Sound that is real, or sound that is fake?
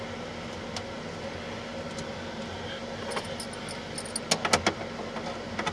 real